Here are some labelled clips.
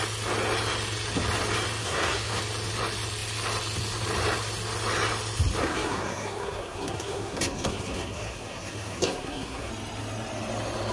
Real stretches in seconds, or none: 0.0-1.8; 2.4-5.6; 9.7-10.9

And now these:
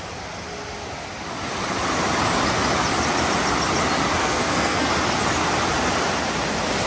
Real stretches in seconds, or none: 0.0-4.2; 4.9-6.9